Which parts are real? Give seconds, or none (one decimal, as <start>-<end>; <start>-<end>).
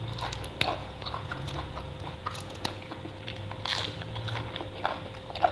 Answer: 0.0-0.8; 2.9-5.5